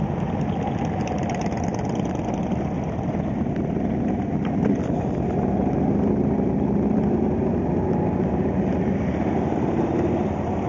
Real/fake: real